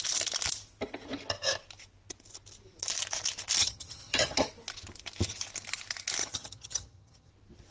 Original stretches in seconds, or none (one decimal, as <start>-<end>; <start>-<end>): 0.0-3.6; 4.5-6.2; 7.3-7.7